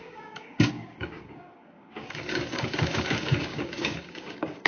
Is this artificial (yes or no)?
yes